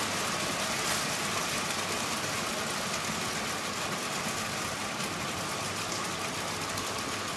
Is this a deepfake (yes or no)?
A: no